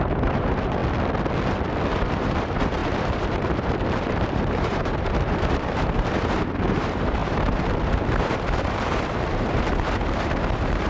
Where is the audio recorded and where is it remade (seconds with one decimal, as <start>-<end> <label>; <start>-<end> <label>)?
0.0-0.8 remade; 0.8-1.9 recorded; 1.9-10.9 remade